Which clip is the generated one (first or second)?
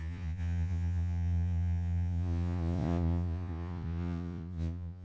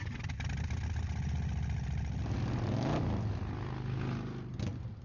first